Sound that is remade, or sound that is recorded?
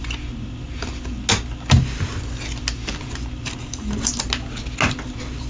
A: recorded